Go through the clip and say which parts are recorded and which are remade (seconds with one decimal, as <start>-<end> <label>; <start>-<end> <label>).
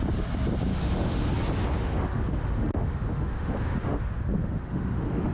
0.0-0.7 recorded; 0.7-1.3 remade; 1.3-1.8 recorded; 1.8-4.0 remade; 4.0-4.4 recorded; 4.4-5.3 remade